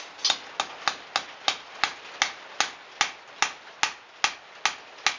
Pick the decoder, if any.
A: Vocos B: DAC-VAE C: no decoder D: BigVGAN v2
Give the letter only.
C